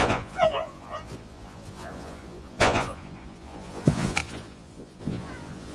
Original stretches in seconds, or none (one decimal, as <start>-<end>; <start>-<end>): none